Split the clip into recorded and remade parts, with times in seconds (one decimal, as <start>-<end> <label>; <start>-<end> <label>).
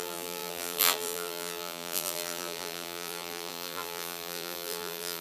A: 0.0-5.2 remade